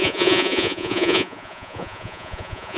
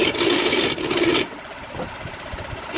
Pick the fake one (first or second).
first